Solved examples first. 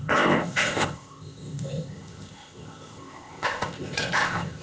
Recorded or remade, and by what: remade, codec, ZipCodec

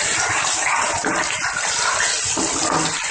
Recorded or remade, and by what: recorded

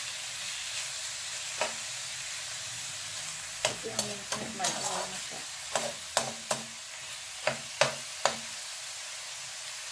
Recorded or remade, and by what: recorded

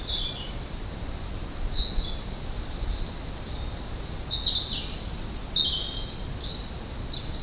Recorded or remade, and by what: recorded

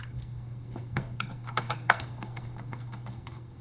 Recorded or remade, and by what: remade, codec, SNAC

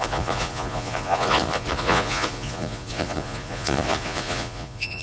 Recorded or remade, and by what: remade, vocoder, Vocos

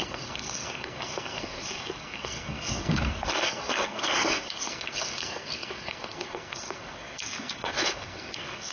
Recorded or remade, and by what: remade, codec, SNAC